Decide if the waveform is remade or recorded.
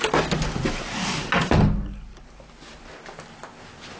recorded